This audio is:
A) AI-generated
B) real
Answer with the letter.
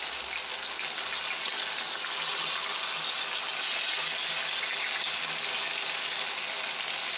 B